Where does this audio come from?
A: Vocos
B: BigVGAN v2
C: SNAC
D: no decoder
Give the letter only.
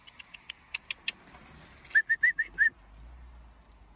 D